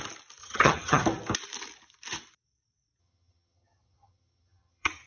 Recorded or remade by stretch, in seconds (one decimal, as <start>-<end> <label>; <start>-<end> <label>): 0.0-0.4 recorded; 0.4-1.0 remade; 1.0-3.0 recorded; 3.0-5.1 remade